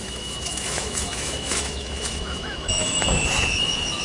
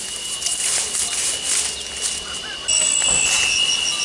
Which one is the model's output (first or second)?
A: first